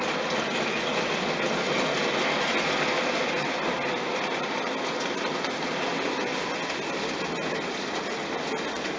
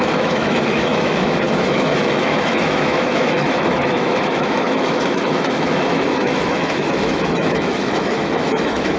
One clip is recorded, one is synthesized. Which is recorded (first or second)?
first